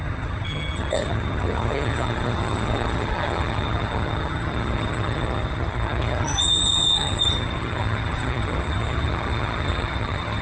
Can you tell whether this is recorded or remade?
remade